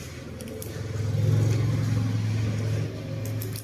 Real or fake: real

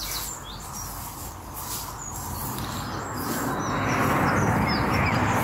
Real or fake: real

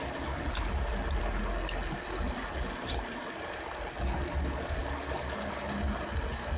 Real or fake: real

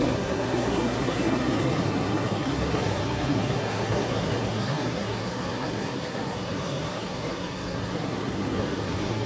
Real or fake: fake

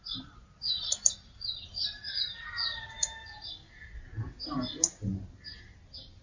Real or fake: real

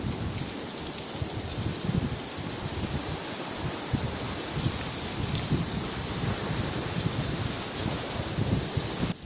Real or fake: real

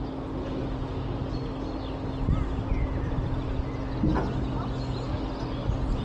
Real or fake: real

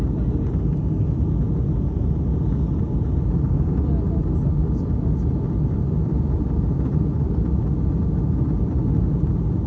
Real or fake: real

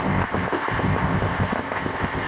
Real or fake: fake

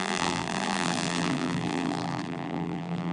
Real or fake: fake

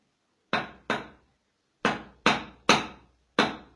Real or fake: real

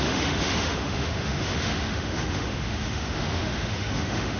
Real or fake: fake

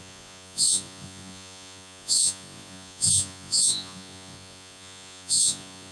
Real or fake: fake